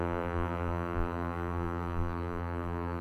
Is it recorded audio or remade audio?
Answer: remade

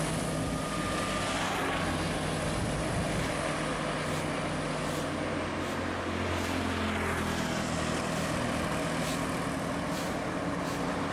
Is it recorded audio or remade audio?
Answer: recorded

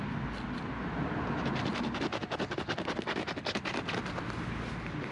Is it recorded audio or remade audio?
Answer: recorded